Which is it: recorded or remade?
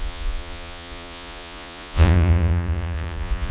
remade